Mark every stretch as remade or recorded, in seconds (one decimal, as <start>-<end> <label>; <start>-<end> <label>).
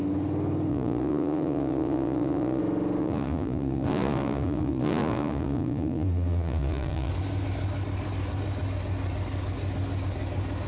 0.0-0.7 recorded; 0.7-2.6 remade; 2.6-3.0 recorded; 3.0-7.1 remade; 7.1-10.7 recorded